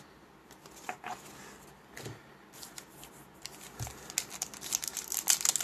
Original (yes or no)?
yes